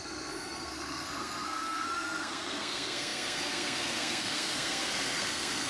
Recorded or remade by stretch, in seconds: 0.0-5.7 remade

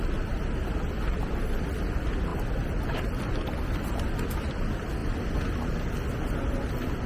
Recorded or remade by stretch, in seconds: 0.0-7.1 recorded

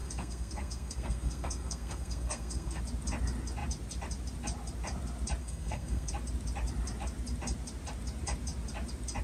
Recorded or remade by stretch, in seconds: 0.0-2.8 remade; 2.8-5.4 recorded; 5.4-6.1 remade; 6.1-9.2 recorded

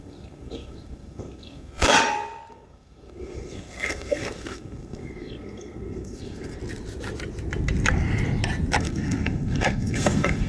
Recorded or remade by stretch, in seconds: 0.0-1.9 remade; 1.9-2.5 recorded; 2.5-6.6 remade; 6.6-8.8 recorded; 8.8-10.5 remade

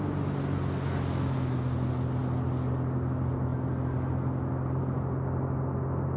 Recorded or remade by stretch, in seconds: 0.0-6.2 recorded

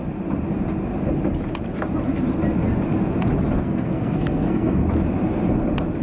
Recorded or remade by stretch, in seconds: 0.0-3.6 recorded; 3.6-4.8 remade; 4.8-6.0 recorded

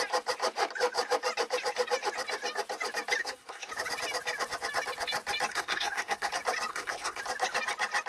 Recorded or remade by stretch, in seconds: 0.0-3.2 recorded; 3.2-3.7 remade; 3.7-5.5 recorded; 5.5-6.3 remade; 6.3-6.7 recorded; 6.7-7.2 remade; 7.2-8.1 recorded